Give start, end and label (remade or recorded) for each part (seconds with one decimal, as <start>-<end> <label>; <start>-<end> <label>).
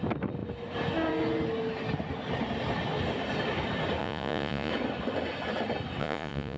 0.0-4.0 recorded; 4.0-4.7 remade; 4.7-6.0 recorded; 6.0-6.6 remade